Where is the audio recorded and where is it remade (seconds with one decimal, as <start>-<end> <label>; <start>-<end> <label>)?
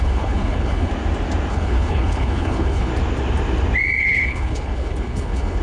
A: 0.0-0.9 remade; 0.9-1.5 recorded; 1.5-2.9 remade; 2.9-4.0 recorded; 4.0-5.6 remade